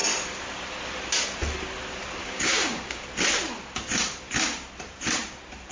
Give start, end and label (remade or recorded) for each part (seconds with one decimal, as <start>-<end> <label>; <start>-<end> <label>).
0.0-2.2 recorded; 2.2-3.0 remade; 3.0-5.7 recorded